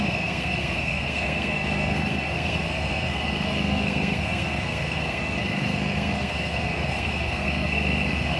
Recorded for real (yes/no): no